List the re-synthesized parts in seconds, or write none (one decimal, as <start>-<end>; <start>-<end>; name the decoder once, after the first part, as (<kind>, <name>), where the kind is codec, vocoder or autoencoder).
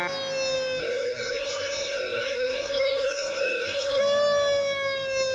0.8-4.0 (codec, SNAC)